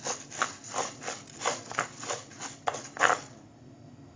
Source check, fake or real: real